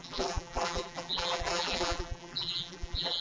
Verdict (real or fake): fake